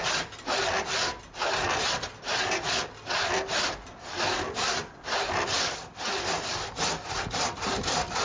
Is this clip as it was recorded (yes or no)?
yes